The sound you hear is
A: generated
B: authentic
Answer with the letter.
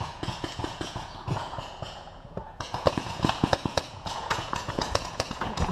A